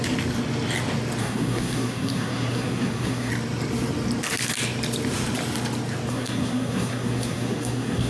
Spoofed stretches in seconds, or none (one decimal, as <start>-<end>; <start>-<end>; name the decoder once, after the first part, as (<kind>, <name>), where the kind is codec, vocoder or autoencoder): 1.2-3.3 (codec, SNAC); 6.1-8.1